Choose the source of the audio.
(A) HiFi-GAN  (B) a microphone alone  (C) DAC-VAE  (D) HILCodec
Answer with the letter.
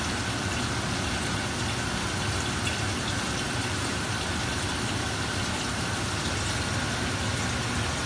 B